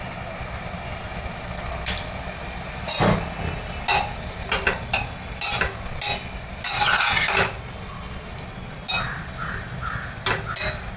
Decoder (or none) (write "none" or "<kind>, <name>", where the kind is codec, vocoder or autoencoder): none